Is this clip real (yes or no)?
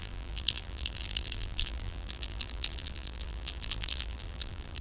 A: no